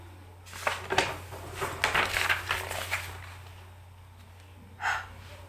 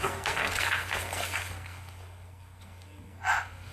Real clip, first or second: first